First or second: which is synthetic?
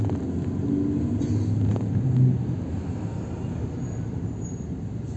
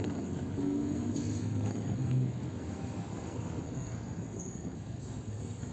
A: second